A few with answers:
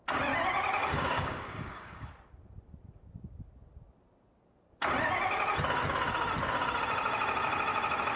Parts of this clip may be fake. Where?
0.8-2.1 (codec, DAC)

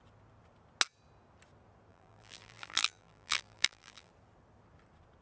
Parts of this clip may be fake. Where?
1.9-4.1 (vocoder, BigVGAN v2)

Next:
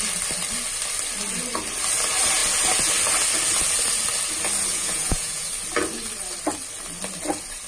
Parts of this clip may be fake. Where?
4.7-5.5 (vocoder, Vocos)